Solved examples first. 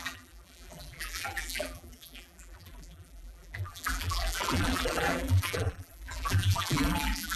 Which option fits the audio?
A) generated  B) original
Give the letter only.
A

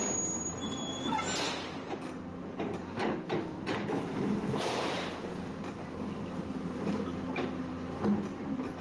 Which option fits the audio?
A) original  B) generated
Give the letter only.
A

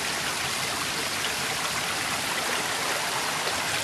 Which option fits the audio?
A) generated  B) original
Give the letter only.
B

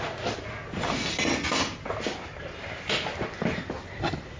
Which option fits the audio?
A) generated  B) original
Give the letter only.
B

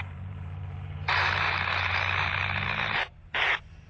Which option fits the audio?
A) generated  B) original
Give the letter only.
A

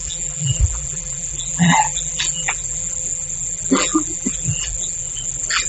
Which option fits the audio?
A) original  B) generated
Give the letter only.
B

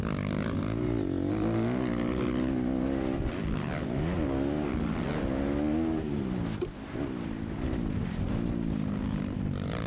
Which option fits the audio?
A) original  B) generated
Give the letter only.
A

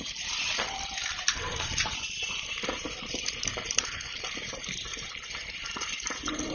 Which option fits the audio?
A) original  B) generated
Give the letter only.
B